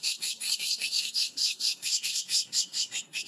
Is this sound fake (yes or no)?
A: yes